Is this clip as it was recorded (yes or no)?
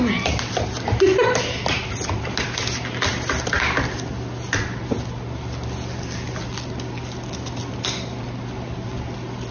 yes